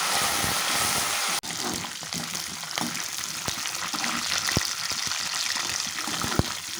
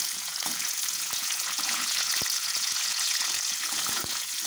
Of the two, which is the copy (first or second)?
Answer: second